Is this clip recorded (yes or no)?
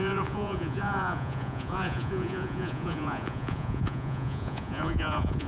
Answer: no